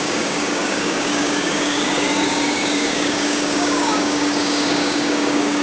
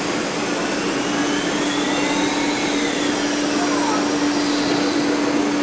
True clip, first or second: second